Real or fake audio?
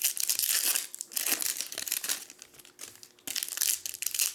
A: real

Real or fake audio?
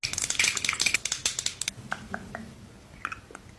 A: real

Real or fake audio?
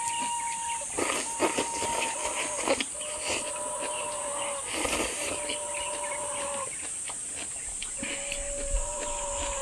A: real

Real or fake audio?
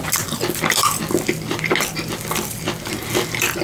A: real